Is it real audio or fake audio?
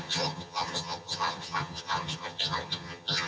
fake